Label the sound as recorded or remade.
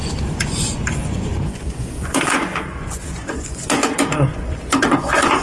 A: remade